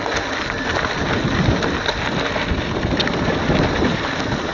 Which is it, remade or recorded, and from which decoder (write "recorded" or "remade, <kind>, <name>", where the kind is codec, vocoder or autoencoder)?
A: recorded